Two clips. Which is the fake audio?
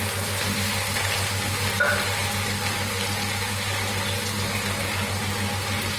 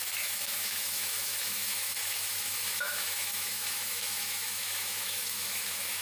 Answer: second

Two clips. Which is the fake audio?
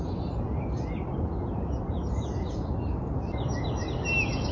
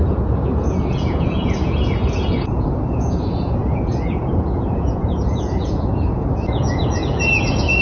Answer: second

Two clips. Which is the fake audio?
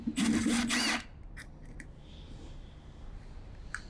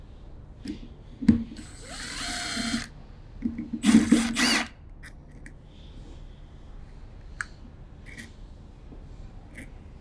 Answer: first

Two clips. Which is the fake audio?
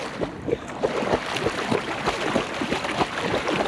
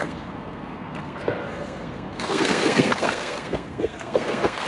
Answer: second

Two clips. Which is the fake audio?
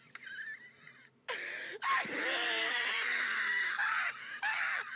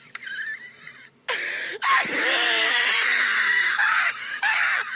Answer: second